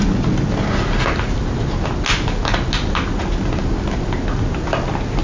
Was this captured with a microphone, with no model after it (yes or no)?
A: yes